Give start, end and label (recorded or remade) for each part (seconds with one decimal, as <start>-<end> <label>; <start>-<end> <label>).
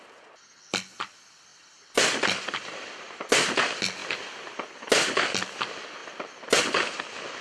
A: 0.0-1.5 recorded; 1.5-3.2 remade; 3.2-4.0 recorded; 4.0-4.9 remade; 4.9-7.4 recorded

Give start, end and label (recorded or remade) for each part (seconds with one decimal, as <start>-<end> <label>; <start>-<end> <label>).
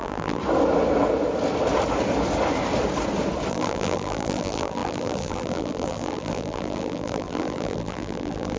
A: 0.0-0.4 remade; 0.4-3.5 recorded; 3.5-8.6 remade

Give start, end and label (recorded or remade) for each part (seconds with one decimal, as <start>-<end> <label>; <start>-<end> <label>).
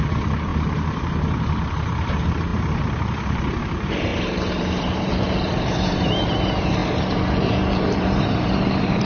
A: 0.0-9.1 remade